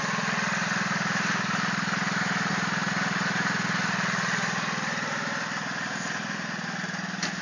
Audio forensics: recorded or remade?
recorded